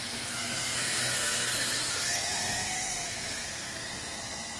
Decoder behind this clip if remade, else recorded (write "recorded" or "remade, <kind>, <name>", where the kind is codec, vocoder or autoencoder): remade, codec, SNAC